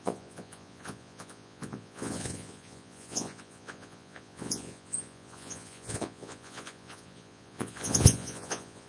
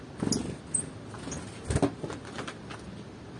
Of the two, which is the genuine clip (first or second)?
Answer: second